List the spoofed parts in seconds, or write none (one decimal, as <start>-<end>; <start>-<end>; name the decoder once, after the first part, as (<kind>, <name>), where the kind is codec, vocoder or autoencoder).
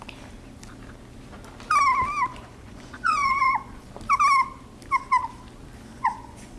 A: 2.3-3.9 (vocoder, Vocos); 5.9-6.6